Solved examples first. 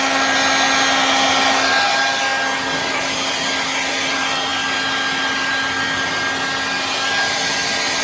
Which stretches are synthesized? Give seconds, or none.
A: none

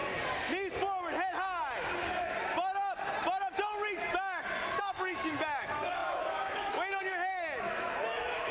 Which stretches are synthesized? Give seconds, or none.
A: 4.8-8.5 (autoencoder, DAC-VAE)

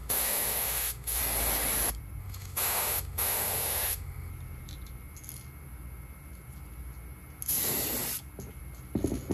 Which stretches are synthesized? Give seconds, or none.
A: 0.0-1.2 (autoencoder, DAC-VAE); 2.2-4.3

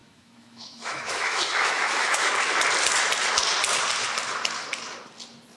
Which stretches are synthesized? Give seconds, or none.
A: 0.0-2.3 (autoencoder, DAC-VAE)

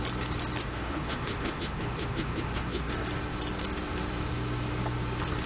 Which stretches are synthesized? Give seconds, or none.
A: 0.6-2.9 (autoencoder, DAC-VAE)

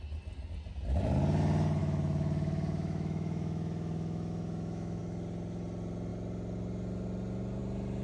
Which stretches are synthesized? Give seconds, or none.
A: 1.8-5.0 (autoencoder, DAC-VAE)

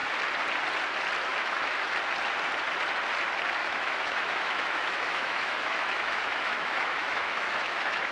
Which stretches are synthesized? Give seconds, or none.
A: 1.3-1.9 (autoencoder, DAC-VAE); 3.6-8.1